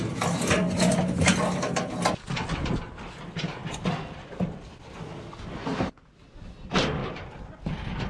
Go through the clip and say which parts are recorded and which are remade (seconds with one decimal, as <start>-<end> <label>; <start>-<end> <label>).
0.0-8.1 recorded